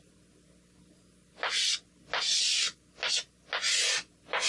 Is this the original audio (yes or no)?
yes